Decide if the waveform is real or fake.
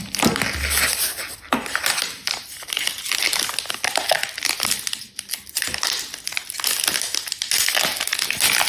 real